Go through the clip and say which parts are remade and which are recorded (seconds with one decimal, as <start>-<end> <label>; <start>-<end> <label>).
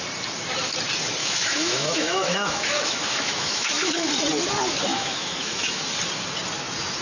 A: 0.0-1.2 recorded; 1.2-4.1 remade; 4.1-4.9 recorded; 4.9-5.8 remade; 5.8-7.0 recorded